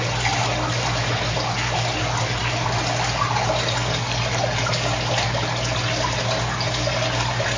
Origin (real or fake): real